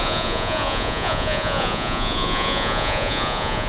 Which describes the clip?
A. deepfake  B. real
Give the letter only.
A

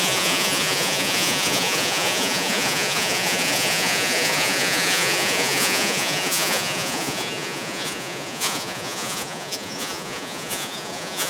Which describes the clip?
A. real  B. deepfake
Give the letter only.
B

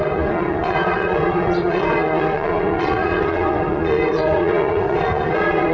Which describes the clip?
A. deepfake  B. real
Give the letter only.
A